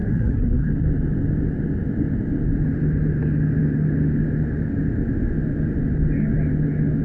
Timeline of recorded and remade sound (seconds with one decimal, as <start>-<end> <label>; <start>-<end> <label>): 0.0-0.7 remade; 0.7-7.0 recorded